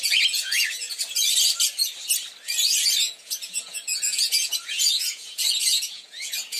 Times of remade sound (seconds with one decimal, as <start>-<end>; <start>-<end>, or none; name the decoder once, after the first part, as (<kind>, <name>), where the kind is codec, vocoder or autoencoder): 0.0-0.9 (vocoder, Vocos); 3.0-6.6